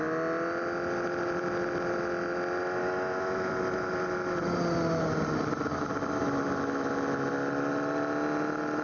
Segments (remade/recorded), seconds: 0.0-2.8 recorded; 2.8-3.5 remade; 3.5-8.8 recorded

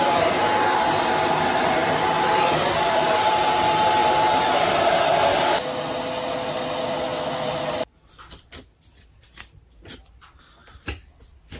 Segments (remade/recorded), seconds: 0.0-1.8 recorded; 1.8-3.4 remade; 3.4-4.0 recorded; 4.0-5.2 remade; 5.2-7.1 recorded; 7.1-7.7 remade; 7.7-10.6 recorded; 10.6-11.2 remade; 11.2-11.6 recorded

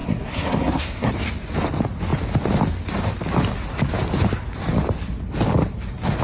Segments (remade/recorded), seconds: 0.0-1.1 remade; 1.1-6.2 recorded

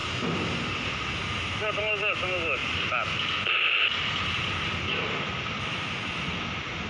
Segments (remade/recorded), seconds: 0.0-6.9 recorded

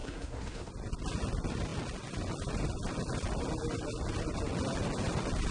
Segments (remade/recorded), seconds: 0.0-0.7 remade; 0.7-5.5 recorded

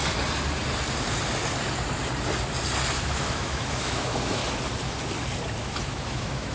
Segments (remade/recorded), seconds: 0.0-2.9 recorded; 2.9-4.4 remade; 4.4-5.6 recorded; 5.6-6.5 remade

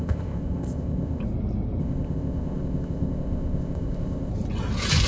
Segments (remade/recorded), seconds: 0.0-1.2 remade; 1.2-1.8 recorded; 1.8-4.3 remade; 4.3-5.1 recorded